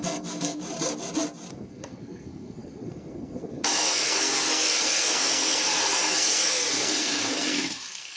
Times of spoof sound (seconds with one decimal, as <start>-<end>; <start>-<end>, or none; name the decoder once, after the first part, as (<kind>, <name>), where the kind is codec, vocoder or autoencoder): 0.0-0.6 (codec, SNAC); 1.5-8.2